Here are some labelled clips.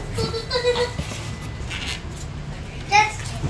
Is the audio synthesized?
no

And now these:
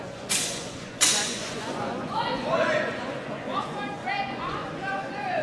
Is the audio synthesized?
yes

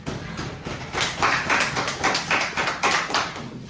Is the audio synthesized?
no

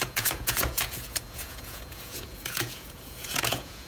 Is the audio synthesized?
yes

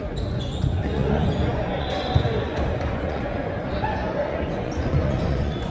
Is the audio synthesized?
yes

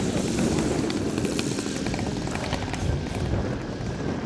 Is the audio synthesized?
no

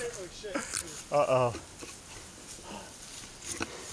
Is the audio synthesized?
no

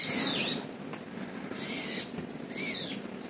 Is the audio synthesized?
no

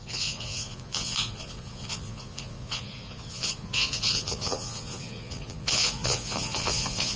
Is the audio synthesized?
yes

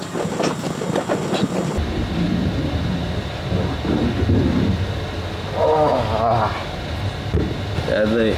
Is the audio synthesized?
no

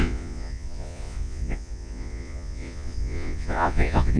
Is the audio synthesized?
yes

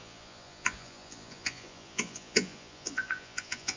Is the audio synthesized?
yes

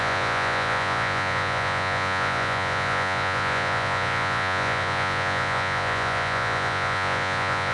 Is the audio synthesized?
yes